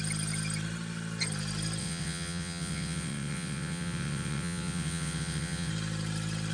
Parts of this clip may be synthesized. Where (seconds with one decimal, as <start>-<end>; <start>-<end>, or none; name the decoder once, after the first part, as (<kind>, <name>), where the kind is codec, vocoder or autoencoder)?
1.8-5.7 (vocoder, WaveNeXt)